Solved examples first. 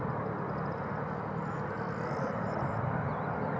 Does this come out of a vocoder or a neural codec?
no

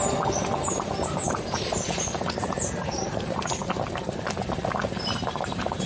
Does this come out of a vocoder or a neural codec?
yes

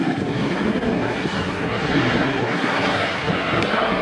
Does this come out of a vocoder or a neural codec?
yes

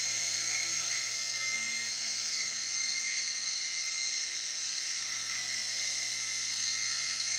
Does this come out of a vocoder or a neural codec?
yes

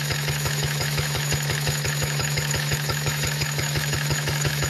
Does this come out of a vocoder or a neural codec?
yes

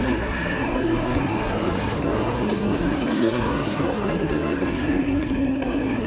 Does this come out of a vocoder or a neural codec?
yes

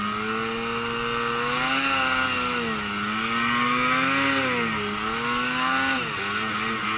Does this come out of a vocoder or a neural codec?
no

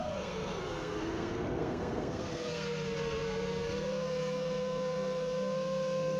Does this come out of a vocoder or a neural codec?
yes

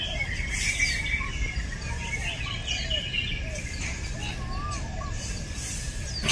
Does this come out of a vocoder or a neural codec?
no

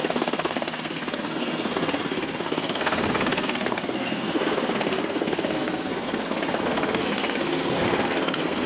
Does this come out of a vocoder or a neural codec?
yes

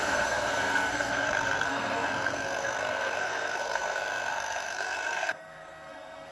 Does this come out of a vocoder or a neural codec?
yes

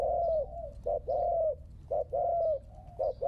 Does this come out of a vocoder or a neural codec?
no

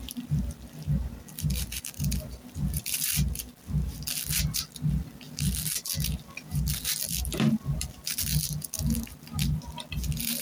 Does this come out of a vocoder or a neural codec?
yes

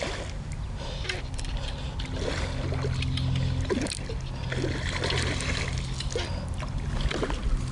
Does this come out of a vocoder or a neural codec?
no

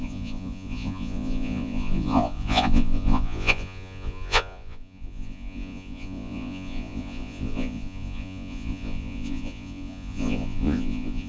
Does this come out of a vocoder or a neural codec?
yes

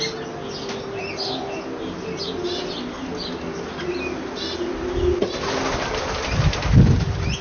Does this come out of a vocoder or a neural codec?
no